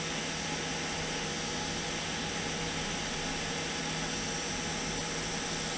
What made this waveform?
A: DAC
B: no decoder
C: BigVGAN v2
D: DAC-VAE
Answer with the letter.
B